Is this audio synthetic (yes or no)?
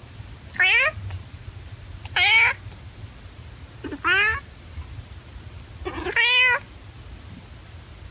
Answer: no